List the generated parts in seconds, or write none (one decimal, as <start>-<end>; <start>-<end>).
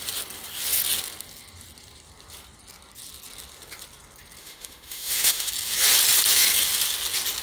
4.4-5.5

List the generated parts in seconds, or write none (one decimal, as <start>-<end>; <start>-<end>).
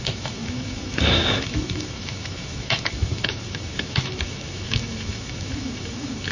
0.0-6.3